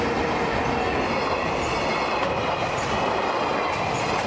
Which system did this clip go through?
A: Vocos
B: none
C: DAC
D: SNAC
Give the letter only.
B